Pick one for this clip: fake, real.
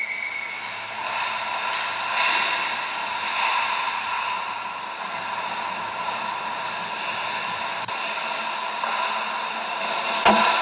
real